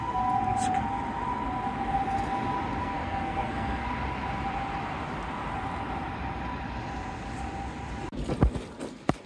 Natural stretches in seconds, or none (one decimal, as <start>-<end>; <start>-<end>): 0.0-2.8; 3.9-9.3

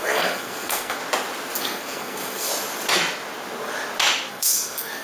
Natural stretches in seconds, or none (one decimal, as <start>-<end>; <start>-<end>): 1.0-1.6; 2.5-4.3

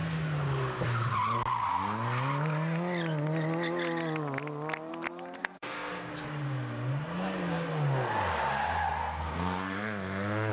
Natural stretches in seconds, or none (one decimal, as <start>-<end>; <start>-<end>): 0.0-5.4; 6.1-9.0